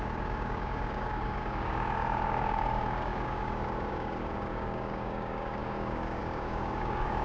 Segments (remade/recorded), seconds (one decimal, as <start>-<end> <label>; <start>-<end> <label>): 0.0-7.2 remade